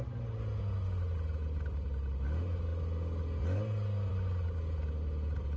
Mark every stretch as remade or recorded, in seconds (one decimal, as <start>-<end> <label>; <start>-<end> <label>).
0.0-5.6 recorded